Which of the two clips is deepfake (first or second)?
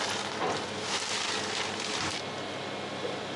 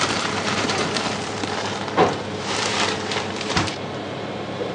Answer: second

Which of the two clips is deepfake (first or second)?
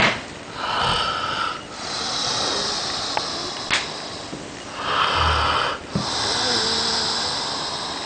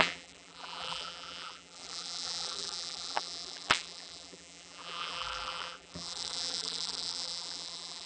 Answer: second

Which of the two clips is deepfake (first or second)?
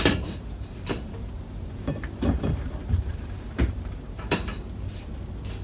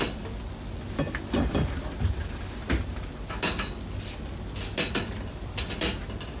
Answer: first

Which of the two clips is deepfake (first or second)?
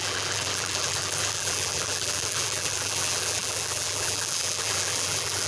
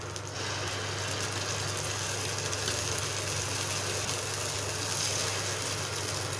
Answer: first